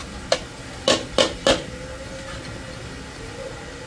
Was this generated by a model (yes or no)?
no